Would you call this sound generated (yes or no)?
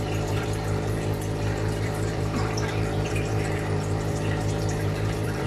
yes